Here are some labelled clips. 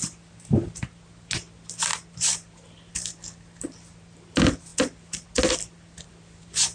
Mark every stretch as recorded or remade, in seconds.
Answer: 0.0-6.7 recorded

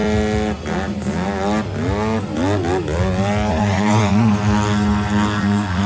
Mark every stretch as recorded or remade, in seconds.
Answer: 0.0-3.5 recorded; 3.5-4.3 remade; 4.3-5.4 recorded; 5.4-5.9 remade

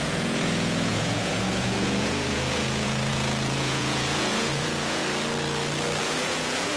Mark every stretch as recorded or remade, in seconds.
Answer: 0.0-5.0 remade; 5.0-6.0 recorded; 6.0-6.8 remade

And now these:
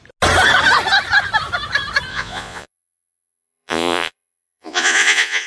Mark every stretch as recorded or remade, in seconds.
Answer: 0.0-2.1 recorded; 2.1-5.5 remade

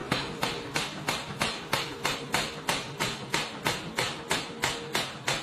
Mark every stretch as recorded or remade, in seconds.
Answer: 0.0-5.4 recorded